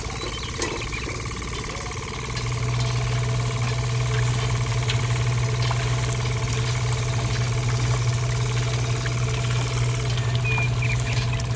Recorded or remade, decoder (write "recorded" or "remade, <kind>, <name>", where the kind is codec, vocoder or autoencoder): recorded